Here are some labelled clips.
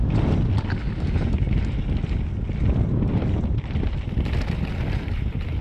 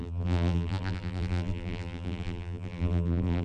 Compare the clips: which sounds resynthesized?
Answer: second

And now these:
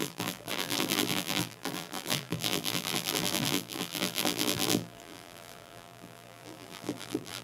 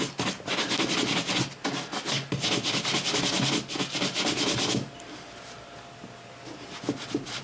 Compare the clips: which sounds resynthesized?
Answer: first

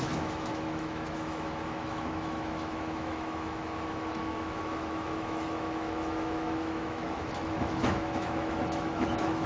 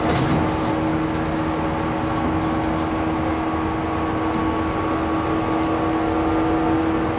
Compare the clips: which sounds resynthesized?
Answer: first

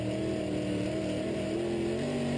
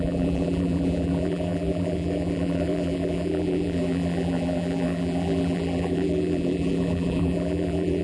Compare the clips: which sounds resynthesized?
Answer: second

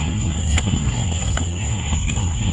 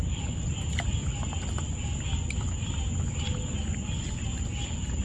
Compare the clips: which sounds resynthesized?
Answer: first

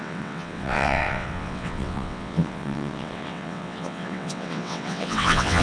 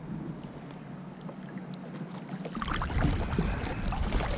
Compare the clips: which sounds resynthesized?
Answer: first